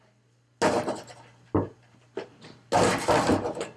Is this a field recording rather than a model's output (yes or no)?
yes